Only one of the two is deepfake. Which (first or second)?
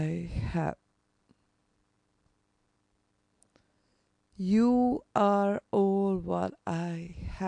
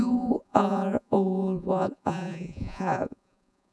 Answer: second